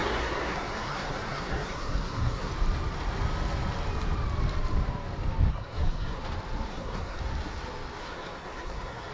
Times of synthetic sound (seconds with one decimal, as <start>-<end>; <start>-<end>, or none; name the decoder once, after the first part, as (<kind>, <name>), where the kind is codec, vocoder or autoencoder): 0.0-2.5 (codec, SNAC); 5.5-6.2; 6.7-7.2; 8.0-9.1